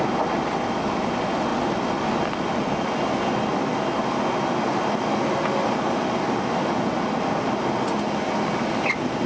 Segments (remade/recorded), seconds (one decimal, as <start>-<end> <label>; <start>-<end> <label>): 0.0-9.3 recorded